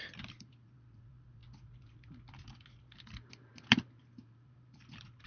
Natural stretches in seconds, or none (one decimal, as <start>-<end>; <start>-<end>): 1.4-4.0